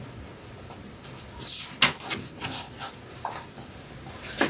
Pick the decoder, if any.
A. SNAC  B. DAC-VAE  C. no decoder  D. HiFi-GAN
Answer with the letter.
C